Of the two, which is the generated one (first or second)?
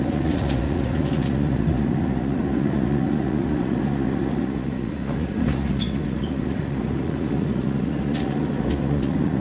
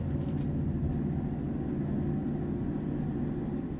first